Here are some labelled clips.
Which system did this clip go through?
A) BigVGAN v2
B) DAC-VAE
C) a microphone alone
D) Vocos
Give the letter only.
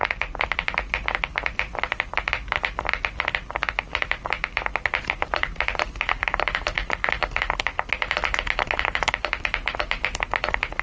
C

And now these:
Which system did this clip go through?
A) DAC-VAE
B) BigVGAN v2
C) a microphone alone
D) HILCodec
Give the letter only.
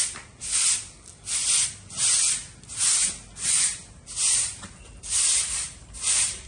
C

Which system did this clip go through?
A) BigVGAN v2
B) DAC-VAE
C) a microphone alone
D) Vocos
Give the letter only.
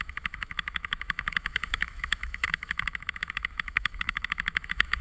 B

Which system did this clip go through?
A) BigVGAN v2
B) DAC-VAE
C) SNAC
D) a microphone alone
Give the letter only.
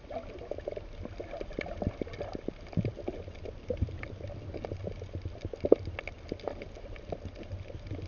D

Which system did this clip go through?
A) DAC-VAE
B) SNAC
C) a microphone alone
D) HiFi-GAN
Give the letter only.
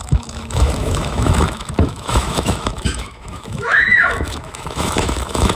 A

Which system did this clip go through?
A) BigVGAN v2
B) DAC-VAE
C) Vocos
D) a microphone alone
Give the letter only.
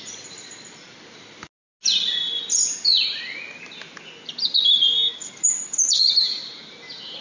D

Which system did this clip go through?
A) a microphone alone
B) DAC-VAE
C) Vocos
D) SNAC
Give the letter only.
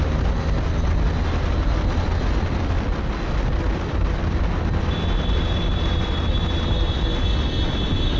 A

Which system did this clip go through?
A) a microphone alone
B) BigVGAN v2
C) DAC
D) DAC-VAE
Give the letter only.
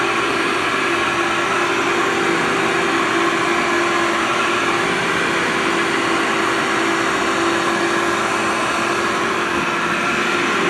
A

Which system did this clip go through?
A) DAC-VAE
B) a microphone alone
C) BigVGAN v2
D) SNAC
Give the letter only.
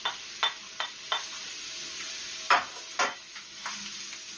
B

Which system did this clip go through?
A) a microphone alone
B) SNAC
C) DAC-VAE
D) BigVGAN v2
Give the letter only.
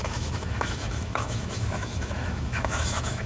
C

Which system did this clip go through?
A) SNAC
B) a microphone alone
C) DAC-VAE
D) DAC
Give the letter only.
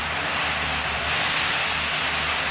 B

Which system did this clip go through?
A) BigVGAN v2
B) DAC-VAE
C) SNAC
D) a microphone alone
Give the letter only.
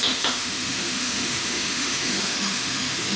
B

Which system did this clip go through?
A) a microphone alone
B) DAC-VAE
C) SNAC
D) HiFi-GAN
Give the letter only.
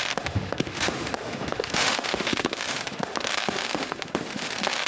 B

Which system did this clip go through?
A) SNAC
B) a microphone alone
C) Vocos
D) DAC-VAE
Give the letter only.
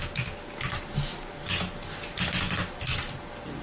B